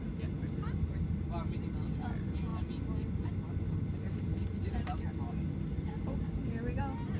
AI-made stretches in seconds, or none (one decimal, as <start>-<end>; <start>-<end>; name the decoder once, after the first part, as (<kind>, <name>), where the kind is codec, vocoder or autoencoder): none